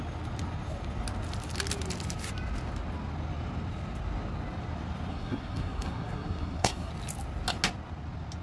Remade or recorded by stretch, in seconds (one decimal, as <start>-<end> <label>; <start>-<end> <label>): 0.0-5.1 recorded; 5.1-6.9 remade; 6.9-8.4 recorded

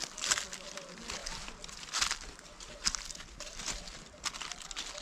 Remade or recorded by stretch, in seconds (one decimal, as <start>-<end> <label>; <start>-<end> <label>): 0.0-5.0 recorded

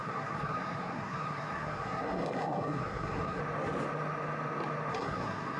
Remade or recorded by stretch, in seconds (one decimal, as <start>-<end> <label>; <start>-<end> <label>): 0.0-3.4 remade; 3.4-4.9 recorded; 4.9-5.6 remade

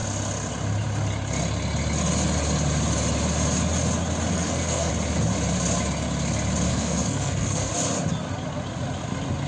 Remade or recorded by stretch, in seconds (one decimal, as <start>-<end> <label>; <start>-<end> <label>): 0.0-4.3 recorded; 4.3-4.9 remade; 4.9-6.7 recorded; 6.7-7.7 remade; 7.7-9.5 recorded

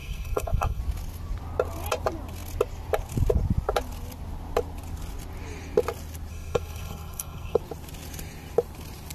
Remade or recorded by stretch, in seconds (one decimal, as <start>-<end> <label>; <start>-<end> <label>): 0.0-0.8 remade; 0.8-6.3 recorded; 6.3-7.6 remade; 7.6-9.1 recorded

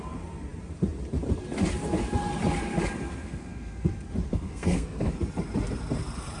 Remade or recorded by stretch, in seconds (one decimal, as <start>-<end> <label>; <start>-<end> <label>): 0.0-3.2 recorded; 3.2-3.9 remade; 3.9-4.3 recorded; 4.3-5.1 remade; 5.1-6.4 recorded